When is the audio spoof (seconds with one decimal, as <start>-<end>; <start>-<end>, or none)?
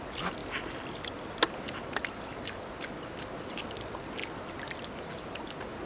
none